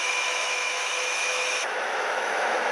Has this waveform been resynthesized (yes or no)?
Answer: yes